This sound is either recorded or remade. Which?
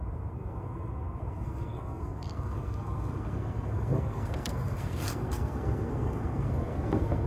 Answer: remade